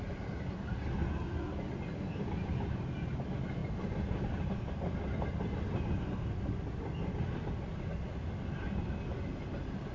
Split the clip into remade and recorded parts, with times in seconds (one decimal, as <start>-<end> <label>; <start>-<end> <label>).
0.0-9.9 recorded